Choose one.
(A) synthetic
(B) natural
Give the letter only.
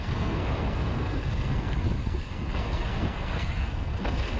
A